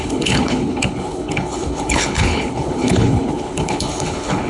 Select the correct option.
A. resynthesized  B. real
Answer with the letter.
A